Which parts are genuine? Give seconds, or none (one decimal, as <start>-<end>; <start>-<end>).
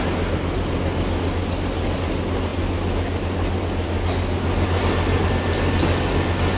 0.0-6.6